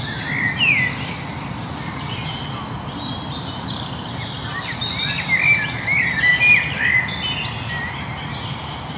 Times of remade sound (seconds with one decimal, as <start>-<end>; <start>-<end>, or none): none